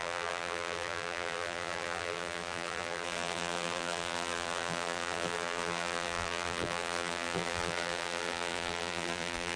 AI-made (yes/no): yes